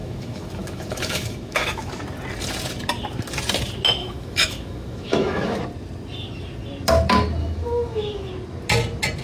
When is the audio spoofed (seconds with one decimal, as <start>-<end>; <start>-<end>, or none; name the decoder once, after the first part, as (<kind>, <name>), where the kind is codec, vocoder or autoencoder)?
0.0-1.9 (autoencoder, DAC-VAE); 4.0-5.6; 7.4-8.3